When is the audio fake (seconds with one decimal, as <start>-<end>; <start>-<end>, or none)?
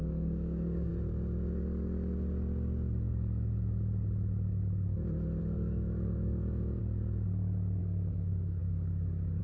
0.0-0.9; 5.4-6.8; 7.8-9.4